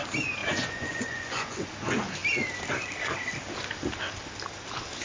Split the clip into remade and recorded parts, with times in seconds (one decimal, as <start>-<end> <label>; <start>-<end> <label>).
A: 0.0-0.4 recorded; 0.4-1.7 remade; 1.7-5.0 recorded